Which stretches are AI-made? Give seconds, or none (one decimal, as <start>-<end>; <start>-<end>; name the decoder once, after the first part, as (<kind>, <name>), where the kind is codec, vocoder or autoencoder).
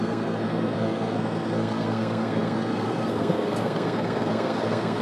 0.0-5.0 (codec, SNAC)